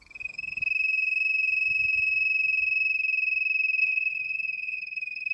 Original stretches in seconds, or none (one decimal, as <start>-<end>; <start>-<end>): 0.6-3.8